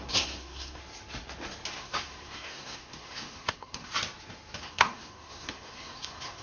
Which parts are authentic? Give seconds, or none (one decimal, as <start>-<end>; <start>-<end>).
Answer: 0.8-1.7; 3.9-4.6

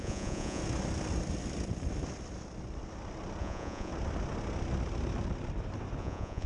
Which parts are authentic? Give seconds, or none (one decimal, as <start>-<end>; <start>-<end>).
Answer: 0.6-3.4; 3.9-6.0

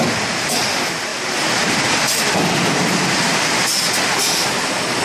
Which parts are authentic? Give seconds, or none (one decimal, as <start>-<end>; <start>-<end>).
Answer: 0.0-5.0

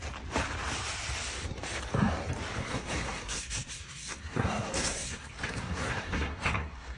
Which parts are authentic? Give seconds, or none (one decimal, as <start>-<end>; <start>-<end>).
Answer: 0.0-2.6

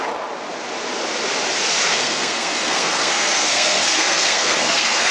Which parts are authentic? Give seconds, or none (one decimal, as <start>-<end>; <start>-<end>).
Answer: 0.0-1.9

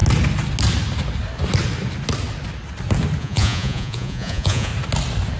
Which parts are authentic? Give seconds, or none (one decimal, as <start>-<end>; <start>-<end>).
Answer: 0.0-3.2; 4.7-5.4

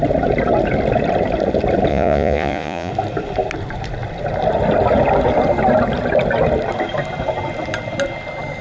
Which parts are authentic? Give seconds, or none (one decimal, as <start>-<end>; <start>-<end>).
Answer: 0.0-1.9; 2.9-8.6

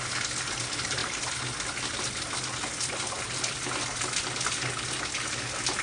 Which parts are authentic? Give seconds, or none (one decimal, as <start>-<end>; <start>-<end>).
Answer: 0.0-5.8